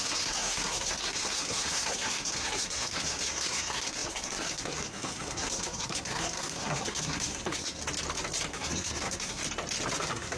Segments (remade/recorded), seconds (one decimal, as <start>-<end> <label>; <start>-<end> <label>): 0.0-7.8 remade; 7.8-8.5 recorded; 8.5-9.4 remade; 9.4-10.0 recorded; 10.0-10.4 remade